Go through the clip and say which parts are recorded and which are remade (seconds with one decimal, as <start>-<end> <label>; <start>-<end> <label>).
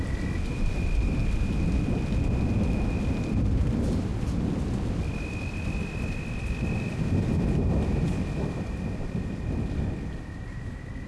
0.0-1.2 remade; 1.2-3.5 recorded; 3.5-4.1 remade; 4.1-8.3 recorded; 8.3-11.1 remade